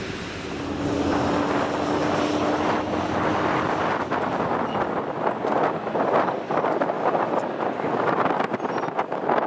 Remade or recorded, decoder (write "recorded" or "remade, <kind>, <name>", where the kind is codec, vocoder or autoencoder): recorded